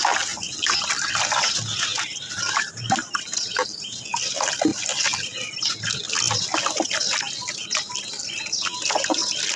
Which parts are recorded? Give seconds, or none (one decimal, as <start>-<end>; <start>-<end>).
0.0-2.1; 4.1-9.6